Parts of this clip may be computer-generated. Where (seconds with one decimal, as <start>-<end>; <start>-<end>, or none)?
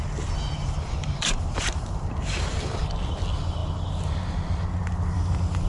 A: 0.6-2.8